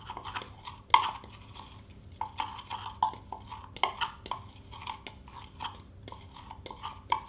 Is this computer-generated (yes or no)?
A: no